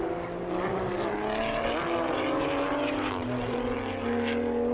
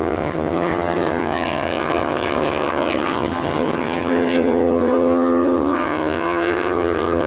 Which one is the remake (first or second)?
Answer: second